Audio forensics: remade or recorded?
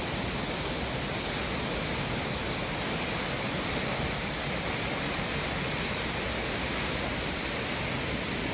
recorded